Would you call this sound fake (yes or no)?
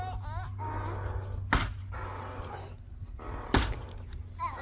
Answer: no